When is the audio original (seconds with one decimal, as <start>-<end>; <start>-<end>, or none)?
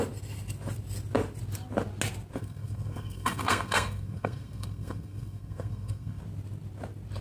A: 0.0-2.4; 6.2-7.2